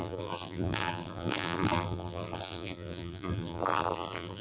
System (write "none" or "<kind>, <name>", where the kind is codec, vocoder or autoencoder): vocoder, BigVGAN v2